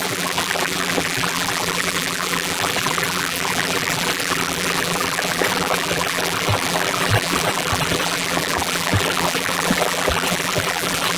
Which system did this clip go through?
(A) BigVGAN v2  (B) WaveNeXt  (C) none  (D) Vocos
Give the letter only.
A